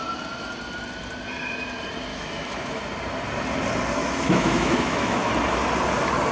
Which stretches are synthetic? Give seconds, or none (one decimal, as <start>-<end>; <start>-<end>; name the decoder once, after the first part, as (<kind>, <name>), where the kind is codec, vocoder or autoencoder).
2.1-2.8 (autoencoder, DAC-VAE); 4.0-5.3

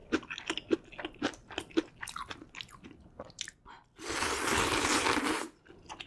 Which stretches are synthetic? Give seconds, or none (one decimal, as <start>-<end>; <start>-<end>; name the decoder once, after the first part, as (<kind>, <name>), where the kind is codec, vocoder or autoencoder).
none

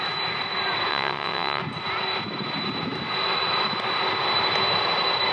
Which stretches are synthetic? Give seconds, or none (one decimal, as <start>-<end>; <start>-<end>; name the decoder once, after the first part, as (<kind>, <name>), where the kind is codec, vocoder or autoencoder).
0.9-1.6 (vocoder, WaveNeXt)

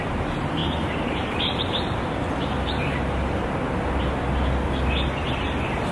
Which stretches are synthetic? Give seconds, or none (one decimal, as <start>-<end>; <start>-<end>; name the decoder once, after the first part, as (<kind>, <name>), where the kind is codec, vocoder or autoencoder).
0.6-3.8 (vocoder, BigVGAN v2)

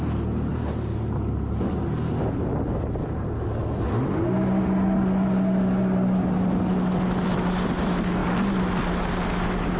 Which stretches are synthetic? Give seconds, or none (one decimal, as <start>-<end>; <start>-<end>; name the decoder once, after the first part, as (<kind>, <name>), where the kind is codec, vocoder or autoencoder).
none

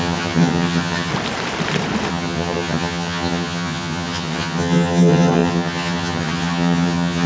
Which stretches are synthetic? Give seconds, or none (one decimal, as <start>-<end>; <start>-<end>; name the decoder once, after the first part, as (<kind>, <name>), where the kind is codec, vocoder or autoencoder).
0.0-1.1 (vocoder, HiFi-GAN); 2.1-7.3

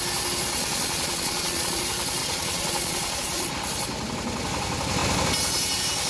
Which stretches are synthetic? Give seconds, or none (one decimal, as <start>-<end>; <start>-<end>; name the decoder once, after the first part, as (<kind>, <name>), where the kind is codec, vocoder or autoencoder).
0.6-1.8 (vocoder, Vocos); 2.2-3.5

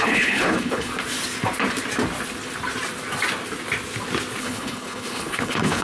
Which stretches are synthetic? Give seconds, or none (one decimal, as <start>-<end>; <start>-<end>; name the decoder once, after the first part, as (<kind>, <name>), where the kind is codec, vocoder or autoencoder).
0.0-0.9 (codec, HILCodec); 4.4-5.8